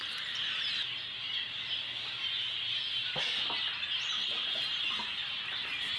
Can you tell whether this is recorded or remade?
recorded